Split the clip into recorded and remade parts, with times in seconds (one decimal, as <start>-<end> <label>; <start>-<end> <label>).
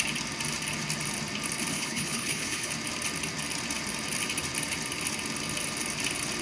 0.0-1.7 recorded; 1.7-2.7 remade; 2.7-6.4 recorded